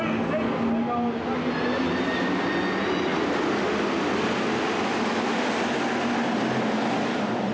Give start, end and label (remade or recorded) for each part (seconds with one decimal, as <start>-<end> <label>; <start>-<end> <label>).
0.0-7.5 recorded